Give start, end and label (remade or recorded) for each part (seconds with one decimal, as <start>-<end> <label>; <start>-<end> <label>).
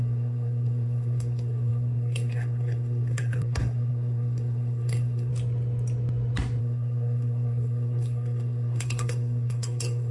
0.0-5.3 remade; 5.3-6.6 recorded; 6.6-10.1 remade